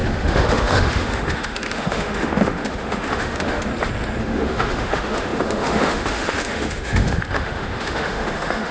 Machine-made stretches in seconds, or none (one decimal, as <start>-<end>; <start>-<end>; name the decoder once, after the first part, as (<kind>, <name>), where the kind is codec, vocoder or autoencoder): 0.0-3.7 (autoencoder, DAC-VAE); 4.2-8.7